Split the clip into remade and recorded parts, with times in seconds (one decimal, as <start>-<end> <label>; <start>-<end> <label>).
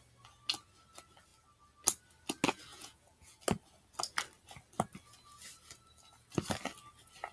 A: 0.0-2.7 recorded; 2.7-3.4 remade; 3.4-7.3 recorded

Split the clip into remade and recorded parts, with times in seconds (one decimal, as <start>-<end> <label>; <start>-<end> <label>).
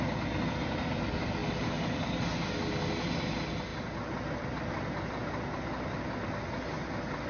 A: 0.0-7.3 recorded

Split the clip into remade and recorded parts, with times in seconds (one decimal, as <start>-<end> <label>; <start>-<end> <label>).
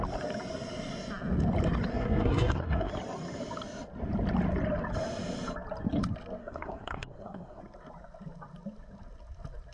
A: 0.0-1.9 recorded; 1.9-2.9 remade; 2.9-6.4 recorded; 6.4-7.6 remade; 7.6-9.7 recorded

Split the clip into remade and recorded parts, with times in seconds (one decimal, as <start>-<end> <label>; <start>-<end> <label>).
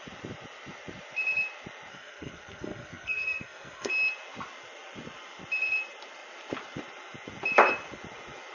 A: 0.0-1.9 recorded; 1.9-3.9 remade; 3.9-8.5 recorded